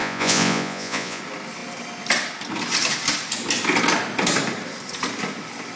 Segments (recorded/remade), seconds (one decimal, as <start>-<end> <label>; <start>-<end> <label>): 0.0-1.2 remade; 1.2-5.8 recorded